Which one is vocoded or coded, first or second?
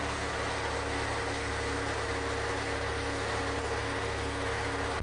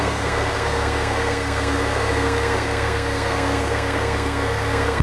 second